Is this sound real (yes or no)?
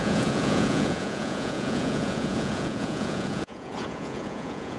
no